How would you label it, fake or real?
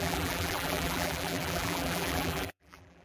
fake